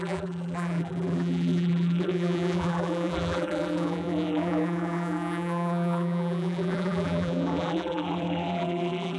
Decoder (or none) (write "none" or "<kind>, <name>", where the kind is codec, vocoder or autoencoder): vocoder, BigVGAN v2